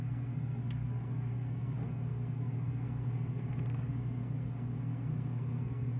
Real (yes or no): no